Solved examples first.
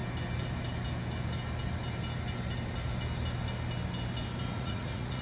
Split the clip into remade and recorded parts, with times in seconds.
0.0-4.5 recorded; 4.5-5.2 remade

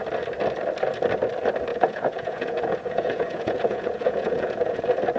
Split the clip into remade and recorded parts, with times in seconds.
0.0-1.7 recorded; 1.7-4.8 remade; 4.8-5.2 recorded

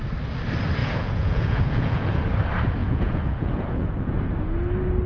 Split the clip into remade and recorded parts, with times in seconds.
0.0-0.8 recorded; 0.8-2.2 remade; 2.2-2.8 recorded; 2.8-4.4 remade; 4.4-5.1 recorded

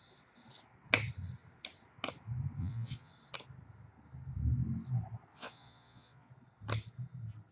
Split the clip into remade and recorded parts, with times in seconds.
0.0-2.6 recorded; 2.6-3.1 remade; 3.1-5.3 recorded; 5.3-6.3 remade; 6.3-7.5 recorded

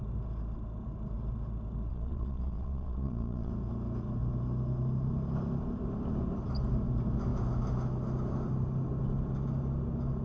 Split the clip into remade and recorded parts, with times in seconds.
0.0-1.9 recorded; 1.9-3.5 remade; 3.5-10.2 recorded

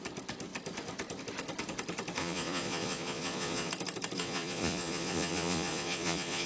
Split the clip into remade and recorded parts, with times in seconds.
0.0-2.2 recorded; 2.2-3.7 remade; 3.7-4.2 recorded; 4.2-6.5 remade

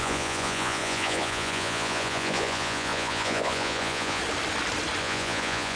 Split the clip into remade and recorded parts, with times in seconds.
0.0-4.2 remade; 4.2-5.0 recorded; 5.0-5.8 remade